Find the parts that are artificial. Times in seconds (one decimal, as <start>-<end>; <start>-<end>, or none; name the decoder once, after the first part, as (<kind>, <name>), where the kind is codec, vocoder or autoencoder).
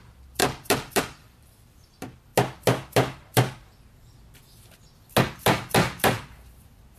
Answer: none